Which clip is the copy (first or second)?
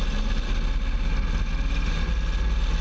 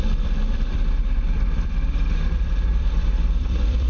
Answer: second